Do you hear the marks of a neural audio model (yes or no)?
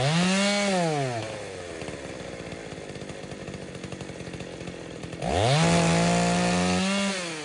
no